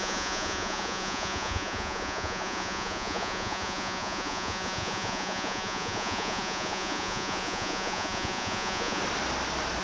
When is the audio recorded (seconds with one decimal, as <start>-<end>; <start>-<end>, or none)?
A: 9.0-9.8